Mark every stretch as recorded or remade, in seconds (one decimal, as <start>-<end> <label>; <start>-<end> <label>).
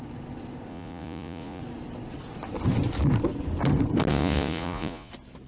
0.0-0.7 recorded; 0.7-1.6 remade; 1.6-4.1 recorded; 4.1-5.1 remade; 5.1-5.5 recorded